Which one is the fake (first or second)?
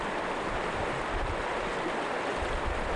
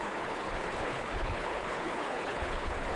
second